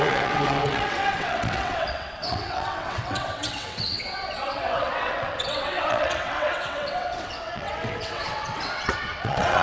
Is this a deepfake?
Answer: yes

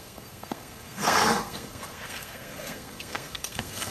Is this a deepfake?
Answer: yes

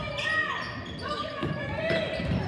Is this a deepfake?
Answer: no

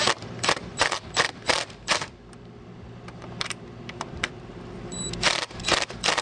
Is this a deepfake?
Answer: yes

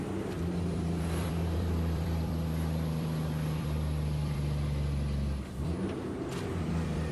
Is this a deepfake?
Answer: yes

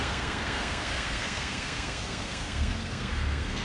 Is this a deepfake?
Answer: yes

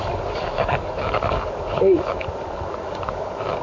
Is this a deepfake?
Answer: yes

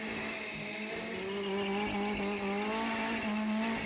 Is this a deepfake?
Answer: no